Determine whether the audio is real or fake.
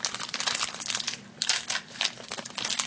real